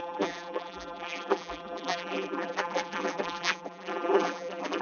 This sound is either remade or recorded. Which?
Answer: remade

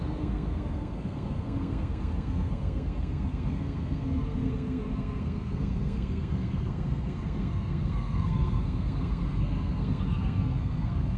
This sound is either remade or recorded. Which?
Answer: remade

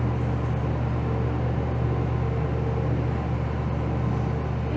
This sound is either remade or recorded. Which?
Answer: recorded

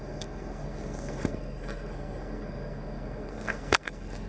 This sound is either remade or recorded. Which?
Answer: remade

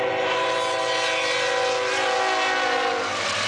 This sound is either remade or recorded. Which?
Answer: recorded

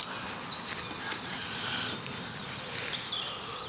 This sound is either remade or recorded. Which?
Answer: recorded